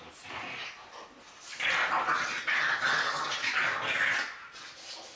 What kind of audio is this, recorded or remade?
recorded